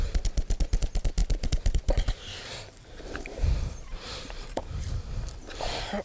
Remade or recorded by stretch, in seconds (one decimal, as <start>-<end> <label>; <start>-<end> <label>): 0.0-1.2 recorded; 1.2-4.6 remade; 4.6-6.0 recorded